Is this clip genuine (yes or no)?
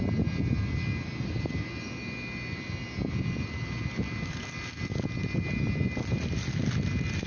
yes